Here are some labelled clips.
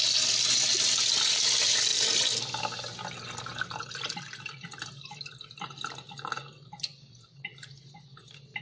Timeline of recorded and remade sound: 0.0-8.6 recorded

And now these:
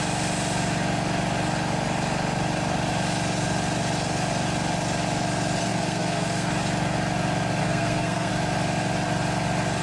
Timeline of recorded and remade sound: 0.0-5.6 recorded; 5.6-6.5 remade; 6.5-7.6 recorded; 7.6-8.3 remade; 8.3-9.8 recorded

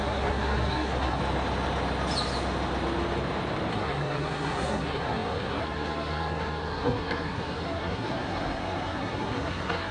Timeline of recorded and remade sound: 0.0-1.2 remade; 1.2-3.7 recorded; 3.7-9.9 remade

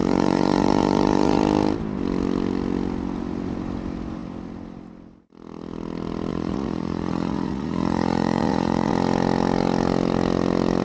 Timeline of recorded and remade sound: 0.0-1.4 remade; 1.4-6.3 recorded; 6.3-8.9 remade; 8.9-10.8 recorded

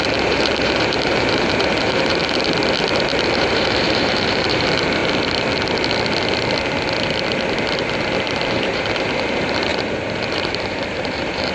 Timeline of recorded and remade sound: 0.0-2.2 remade; 2.2-3.3 recorded; 3.3-5.0 remade; 5.0-8.5 recorded; 8.5-11.5 remade